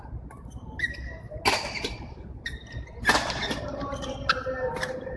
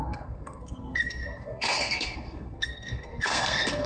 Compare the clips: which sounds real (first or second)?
first